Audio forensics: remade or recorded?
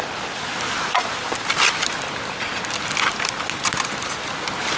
recorded